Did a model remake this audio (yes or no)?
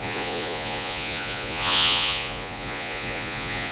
yes